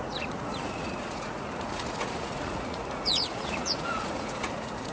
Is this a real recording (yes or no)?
no